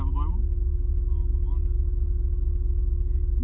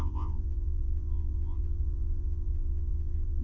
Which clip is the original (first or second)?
first